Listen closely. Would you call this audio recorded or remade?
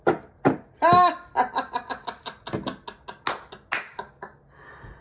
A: recorded